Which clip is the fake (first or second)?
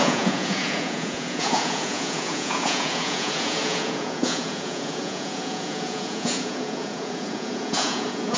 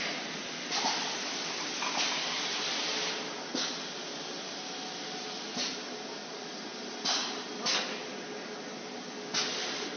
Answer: first